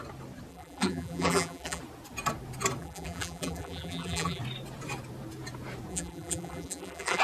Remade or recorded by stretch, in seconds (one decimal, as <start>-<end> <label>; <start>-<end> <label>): 0.0-0.5 recorded; 0.5-1.8 remade; 1.8-2.8 recorded; 2.8-4.4 remade; 4.4-5.9 recorded; 5.9-7.2 remade